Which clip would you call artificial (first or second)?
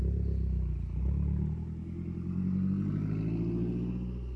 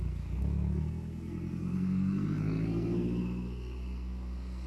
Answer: second